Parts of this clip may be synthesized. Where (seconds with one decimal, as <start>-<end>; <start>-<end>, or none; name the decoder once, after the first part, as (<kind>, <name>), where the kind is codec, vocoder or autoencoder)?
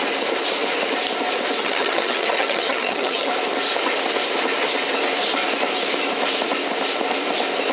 1.6-3.3 (vocoder, HiFi-GAN)